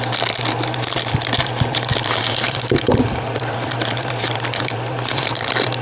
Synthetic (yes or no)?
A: yes